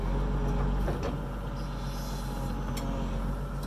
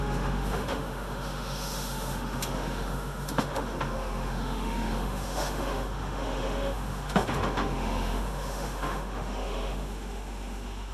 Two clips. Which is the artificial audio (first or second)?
second